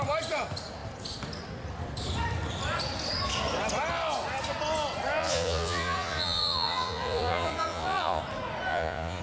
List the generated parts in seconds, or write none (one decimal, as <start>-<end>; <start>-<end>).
5.2-8.2; 8.7-9.2